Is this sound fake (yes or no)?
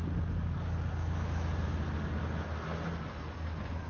no